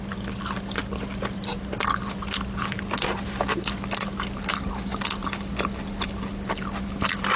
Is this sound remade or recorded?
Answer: recorded